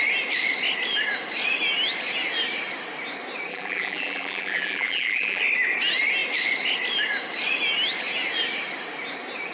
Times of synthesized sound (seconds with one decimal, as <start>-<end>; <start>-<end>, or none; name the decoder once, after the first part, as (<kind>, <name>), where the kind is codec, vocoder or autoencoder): 3.5-5.4 (vocoder, BigVGAN v2)